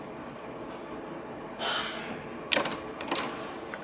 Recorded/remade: recorded